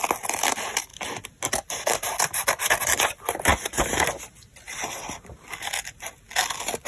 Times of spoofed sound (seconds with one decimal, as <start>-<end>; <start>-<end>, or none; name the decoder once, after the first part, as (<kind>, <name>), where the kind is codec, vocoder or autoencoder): none